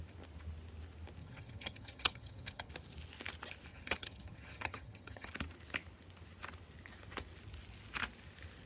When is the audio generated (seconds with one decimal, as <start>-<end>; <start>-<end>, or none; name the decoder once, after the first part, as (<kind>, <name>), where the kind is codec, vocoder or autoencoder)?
1.2-2.7 (vocoder, HiFi-GAN); 3.7-5.3